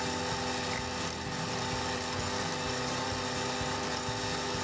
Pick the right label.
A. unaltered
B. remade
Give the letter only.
A